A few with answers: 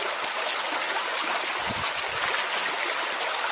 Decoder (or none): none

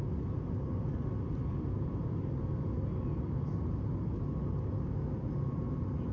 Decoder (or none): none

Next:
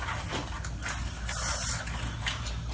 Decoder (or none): none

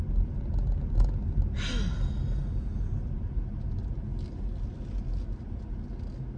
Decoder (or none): none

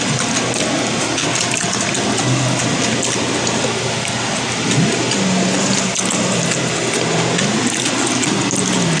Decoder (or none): none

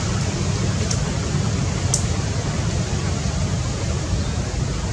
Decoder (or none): none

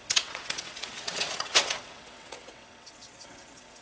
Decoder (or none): vocoder, WaveNeXt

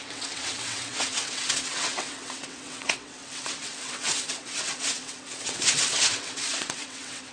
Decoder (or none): vocoder, WaveNeXt